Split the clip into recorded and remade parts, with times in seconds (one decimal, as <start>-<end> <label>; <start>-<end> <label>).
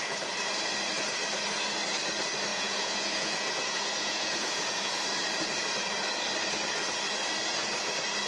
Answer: 0.0-2.5 recorded; 2.5-5.0 remade; 5.0-8.3 recorded